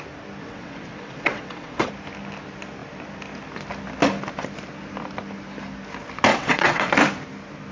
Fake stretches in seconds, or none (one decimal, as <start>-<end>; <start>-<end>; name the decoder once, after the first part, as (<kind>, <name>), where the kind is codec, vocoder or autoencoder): 0.4-1.9 (vocoder, WaveNeXt); 6.3-6.9